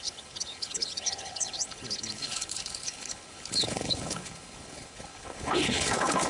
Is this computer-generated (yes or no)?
yes